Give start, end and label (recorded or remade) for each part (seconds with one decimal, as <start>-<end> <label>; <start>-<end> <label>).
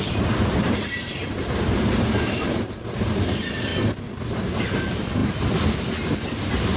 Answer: 0.0-3.7 remade; 3.7-4.3 recorded; 4.3-6.8 remade